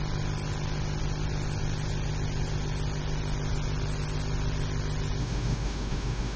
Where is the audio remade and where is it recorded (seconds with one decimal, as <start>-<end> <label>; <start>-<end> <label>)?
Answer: 0.0-5.2 recorded; 5.2-6.4 remade